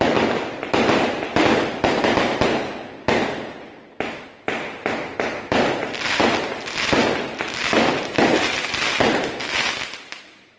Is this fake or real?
real